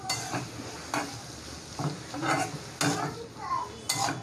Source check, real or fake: real